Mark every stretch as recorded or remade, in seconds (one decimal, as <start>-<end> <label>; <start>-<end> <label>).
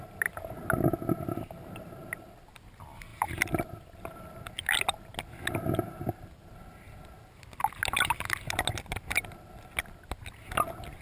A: 0.0-11.0 recorded